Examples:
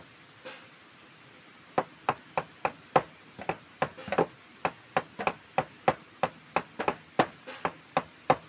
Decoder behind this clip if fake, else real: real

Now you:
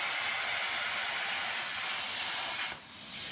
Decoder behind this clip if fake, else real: real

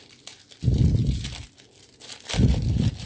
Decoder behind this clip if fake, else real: real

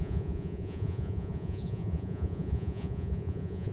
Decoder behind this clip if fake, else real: fake, vocoder, Vocos